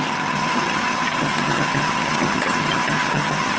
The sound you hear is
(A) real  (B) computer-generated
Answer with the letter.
B